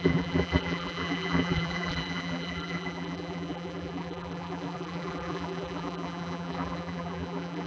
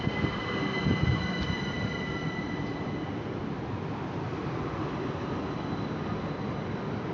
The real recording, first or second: second